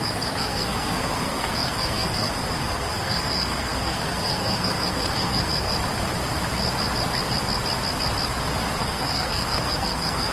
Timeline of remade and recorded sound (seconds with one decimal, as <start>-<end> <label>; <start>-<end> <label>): 0.0-5.7 remade; 5.7-8.8 recorded; 8.8-10.3 remade